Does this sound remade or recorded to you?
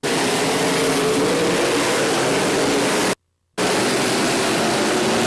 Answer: recorded